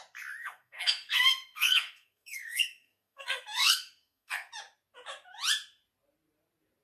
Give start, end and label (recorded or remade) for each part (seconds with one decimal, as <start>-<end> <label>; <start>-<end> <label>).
0.0-0.4 recorded; 0.4-4.5 remade; 4.5-6.8 recorded